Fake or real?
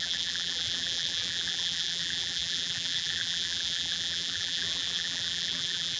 fake